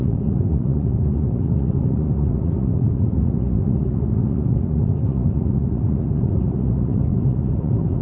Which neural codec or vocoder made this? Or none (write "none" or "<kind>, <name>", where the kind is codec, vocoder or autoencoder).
vocoder, Vocos